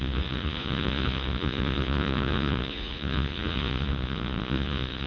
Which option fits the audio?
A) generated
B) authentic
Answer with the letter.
A